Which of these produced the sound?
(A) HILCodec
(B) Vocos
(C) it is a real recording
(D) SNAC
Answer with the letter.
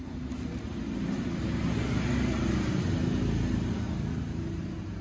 C